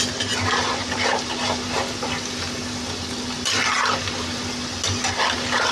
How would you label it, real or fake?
real